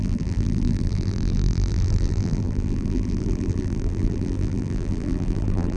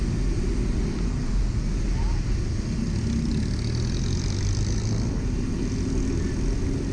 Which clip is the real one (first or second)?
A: second